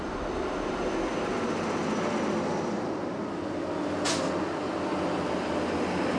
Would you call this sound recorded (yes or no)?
yes